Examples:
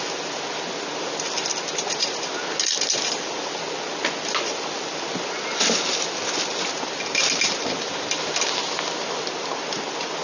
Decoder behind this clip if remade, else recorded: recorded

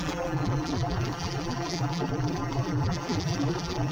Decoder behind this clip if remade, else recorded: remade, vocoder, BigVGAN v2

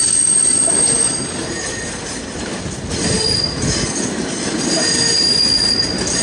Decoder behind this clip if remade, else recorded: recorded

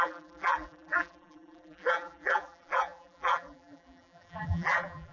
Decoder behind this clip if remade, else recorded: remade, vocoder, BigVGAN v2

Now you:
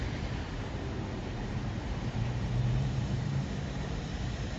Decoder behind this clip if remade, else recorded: remade, vocoder, BigVGAN v2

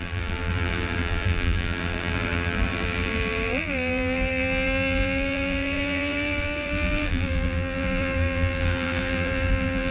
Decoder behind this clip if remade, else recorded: remade, vocoder, BigVGAN v2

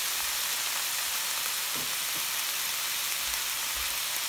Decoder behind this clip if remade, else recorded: recorded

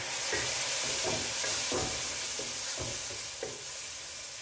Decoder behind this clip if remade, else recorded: recorded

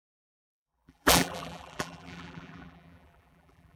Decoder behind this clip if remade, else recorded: remade, vocoder, BigVGAN v2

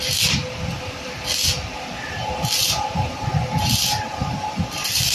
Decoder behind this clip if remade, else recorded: remade, vocoder, BigVGAN v2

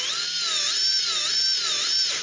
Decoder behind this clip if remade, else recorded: recorded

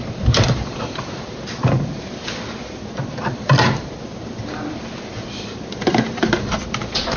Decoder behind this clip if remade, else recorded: remade, vocoder, BigVGAN v2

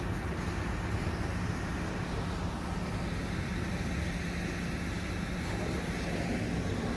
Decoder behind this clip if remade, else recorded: recorded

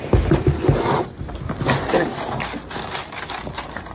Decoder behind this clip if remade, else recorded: recorded